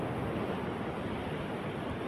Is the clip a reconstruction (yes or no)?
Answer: no